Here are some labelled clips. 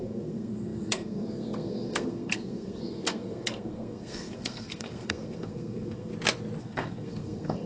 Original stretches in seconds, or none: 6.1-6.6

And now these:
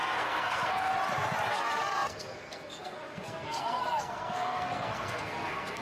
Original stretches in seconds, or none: 0.9-1.5

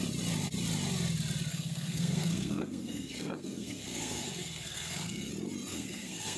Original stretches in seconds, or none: 0.0-1.5; 5.3-5.7

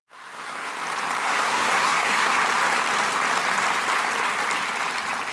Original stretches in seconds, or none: 0.7-1.2; 2.4-5.3

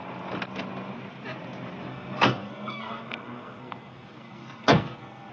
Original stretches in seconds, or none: 0.0-1.9

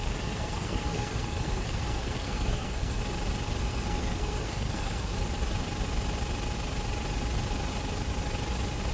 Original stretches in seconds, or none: 3.0-3.6; 5.1-8.9

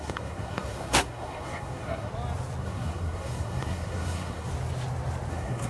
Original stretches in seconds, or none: 2.1-2.6; 4.5-5.3

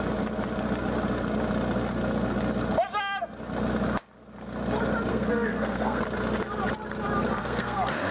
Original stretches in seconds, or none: 0.0-5.1; 6.0-7.4